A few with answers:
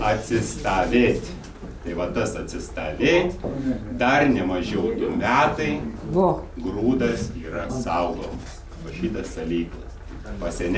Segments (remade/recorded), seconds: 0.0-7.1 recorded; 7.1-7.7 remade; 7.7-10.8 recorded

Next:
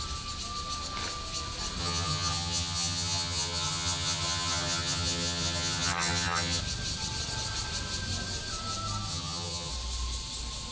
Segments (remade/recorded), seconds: 0.0-1.8 recorded; 1.8-6.6 remade; 6.6-9.1 recorded; 9.1-9.7 remade; 9.7-10.7 recorded

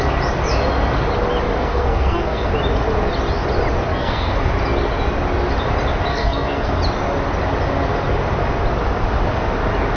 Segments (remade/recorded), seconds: 0.0-1.6 recorded; 1.6-2.5 remade; 2.5-3.9 recorded; 3.9-4.5 remade; 4.5-6.1 recorded; 6.1-6.7 remade; 6.7-10.0 recorded

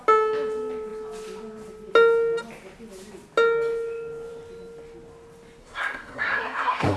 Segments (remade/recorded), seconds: 0.0-5.6 recorded; 5.6-7.0 remade

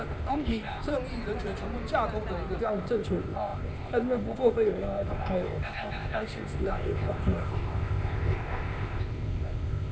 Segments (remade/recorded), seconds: 0.0-0.9 remade; 0.9-2.6 recorded; 2.6-9.9 remade

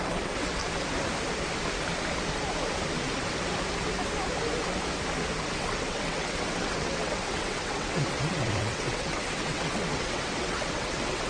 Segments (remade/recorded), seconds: 0.0-0.6 remade; 0.6-5.5 recorded; 5.5-11.3 remade

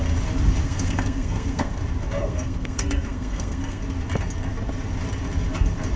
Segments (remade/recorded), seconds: 0.0-0.6 recorded; 0.6-1.8 remade; 1.8-2.2 recorded; 2.2-3.8 remade; 3.8-6.0 recorded

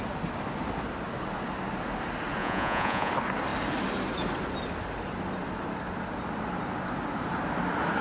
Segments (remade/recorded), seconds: 0.0-2.4 recorded; 2.4-3.1 remade; 3.1-8.0 recorded